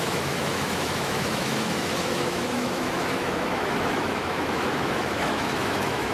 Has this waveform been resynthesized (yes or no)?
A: yes